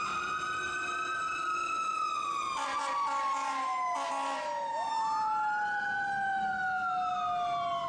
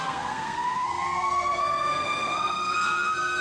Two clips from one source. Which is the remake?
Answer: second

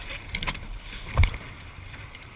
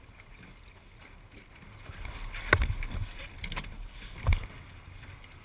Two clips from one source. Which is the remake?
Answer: first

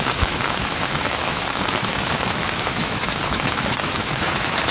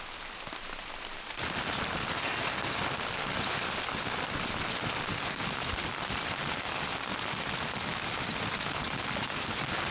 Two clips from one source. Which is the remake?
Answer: first